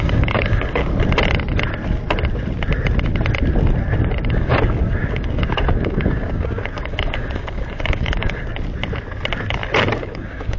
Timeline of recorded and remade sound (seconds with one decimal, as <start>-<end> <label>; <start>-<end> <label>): 0.0-0.8 remade; 0.8-4.3 recorded; 4.3-8.5 remade; 8.5-10.0 recorded; 10.0-10.6 remade